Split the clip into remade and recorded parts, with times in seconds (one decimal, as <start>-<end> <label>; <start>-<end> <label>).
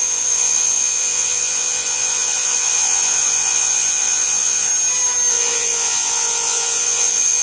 0.0-4.7 remade; 4.7-5.3 recorded; 5.3-7.4 remade